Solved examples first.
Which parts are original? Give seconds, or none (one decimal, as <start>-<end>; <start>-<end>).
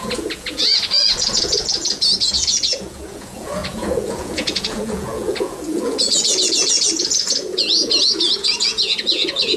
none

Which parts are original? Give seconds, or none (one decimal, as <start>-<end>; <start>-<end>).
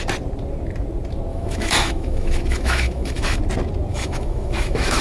0.0-1.3; 3.4-3.9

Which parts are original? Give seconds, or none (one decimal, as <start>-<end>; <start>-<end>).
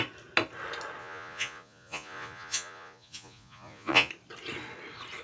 0.0-1.0; 4.1-5.2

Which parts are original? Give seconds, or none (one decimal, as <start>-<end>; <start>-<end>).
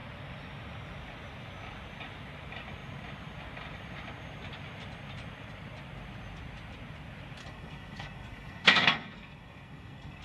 0.0-7.4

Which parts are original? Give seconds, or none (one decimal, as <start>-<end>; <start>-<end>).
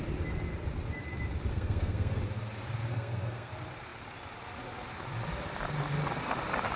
0.0-1.5; 2.2-2.9; 3.5-6.8